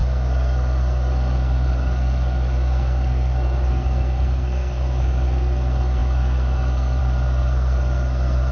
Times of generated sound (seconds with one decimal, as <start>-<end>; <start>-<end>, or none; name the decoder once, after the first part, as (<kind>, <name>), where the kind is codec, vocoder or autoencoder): 0.0-8.5 (codec, SNAC)